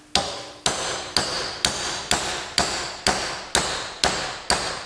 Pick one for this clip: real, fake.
real